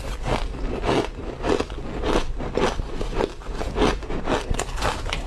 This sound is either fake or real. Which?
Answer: real